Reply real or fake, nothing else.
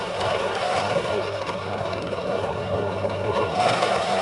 fake